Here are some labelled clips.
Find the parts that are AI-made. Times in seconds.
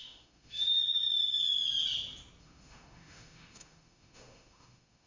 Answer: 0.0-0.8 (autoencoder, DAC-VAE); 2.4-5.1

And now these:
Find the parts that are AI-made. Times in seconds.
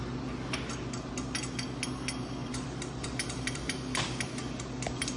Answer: 2.4-4.6 (vocoder, BigVGAN v2)